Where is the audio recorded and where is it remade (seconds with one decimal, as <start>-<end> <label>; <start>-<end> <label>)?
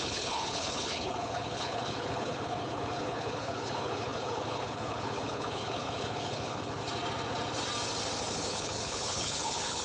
0.0-6.8 remade; 6.8-8.5 recorded; 8.5-9.8 remade